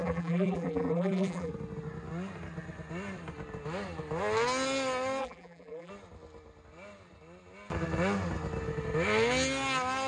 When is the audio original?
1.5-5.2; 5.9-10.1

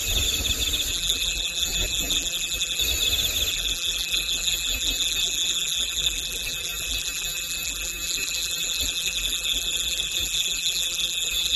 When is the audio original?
0.0-0.9; 2.8-3.5

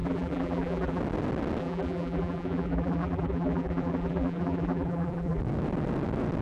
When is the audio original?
1.0-1.6; 5.4-6.4

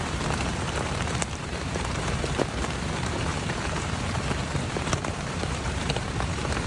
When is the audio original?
none

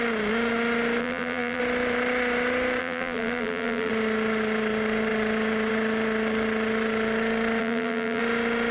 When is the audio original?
0.0-1.0; 1.6-2.8; 3.9-7.6; 8.2-8.7

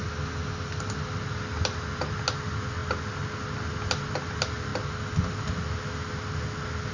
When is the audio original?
0.0-6.9

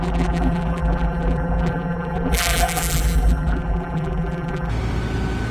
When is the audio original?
4.7-5.5

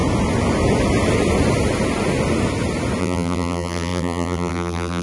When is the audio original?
0.0-3.0